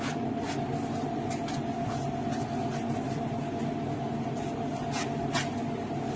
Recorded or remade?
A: recorded